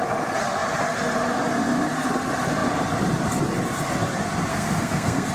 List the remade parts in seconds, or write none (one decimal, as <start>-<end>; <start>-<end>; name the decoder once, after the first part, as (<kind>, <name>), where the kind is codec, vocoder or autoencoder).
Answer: 4.5-5.3 (codec, SNAC)